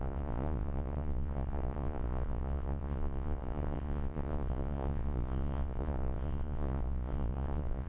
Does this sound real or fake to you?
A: fake